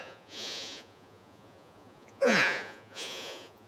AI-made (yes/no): yes